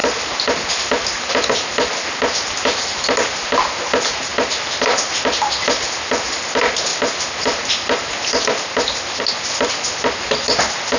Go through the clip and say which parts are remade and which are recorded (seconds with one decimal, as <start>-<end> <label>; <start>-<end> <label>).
0.0-11.0 recorded